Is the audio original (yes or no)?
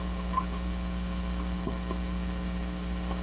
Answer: no